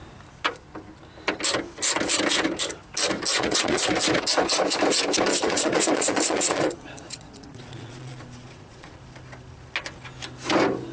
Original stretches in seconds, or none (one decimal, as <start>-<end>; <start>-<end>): 0.0-3.3; 3.9-5.3; 8.9-10.9